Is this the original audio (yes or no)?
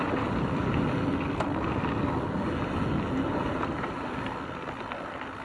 yes